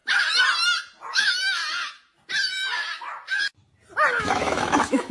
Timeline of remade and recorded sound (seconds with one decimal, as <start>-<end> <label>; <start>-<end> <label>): 0.0-1.1 recorded; 1.1-1.6 remade; 1.6-4.2 recorded; 4.2-5.1 remade